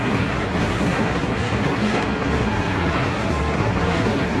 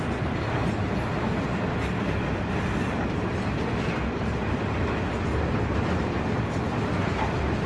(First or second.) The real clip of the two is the second